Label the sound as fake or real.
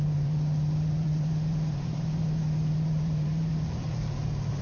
fake